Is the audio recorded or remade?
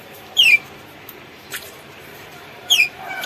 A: remade